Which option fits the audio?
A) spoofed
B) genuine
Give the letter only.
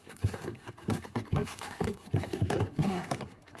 A